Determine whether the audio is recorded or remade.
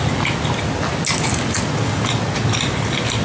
recorded